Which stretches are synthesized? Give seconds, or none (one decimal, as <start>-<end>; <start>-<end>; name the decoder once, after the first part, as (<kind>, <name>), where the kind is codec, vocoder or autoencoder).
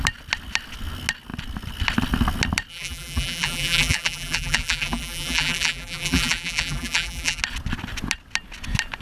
2.7-7.4 (vocoder, BigVGAN v2)